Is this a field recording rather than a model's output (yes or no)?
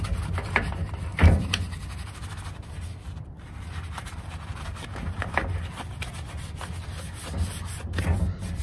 yes